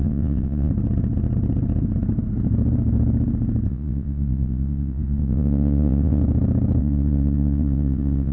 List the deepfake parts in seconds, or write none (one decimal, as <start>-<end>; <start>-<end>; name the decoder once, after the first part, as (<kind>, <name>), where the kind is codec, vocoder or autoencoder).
0.0-0.7 (vocoder, WaveNeXt); 3.7-6.2; 6.8-8.3

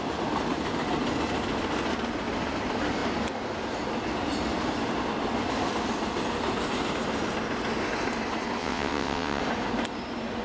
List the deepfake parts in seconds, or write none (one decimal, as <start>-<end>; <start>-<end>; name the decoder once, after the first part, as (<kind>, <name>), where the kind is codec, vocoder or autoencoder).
8.6-9.4 (vocoder, WaveNeXt)